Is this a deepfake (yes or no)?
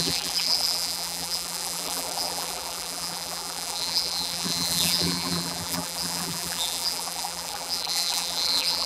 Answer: yes